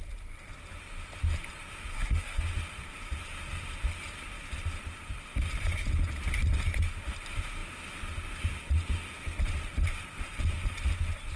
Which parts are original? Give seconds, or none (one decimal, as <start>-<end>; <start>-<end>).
0.0-1.9; 2.4-11.4